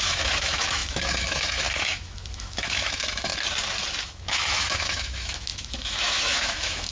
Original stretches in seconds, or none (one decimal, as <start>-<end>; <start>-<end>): 3.3-4.0